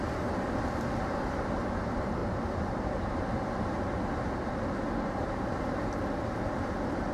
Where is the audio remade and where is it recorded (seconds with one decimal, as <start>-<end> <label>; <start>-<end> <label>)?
0.0-2.2 recorded; 2.2-6.0 remade; 6.0-7.1 recorded